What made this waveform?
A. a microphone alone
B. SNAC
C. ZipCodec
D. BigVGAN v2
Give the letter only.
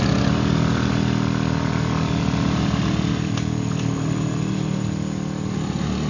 A